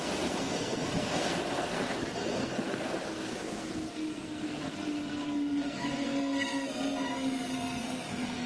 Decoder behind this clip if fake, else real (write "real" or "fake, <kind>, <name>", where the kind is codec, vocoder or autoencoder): fake, codec, SNAC